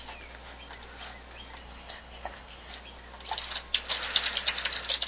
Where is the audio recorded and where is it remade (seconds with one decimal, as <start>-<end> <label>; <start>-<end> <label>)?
0.0-1.6 recorded; 1.6-2.7 remade; 2.7-5.1 recorded